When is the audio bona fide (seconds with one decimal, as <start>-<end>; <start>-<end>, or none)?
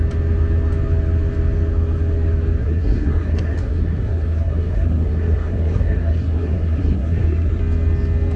0.0-2.6; 7.6-8.4